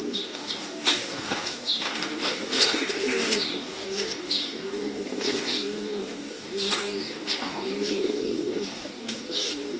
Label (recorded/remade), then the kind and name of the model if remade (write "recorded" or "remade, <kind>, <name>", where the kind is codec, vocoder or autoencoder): remade, codec, DAC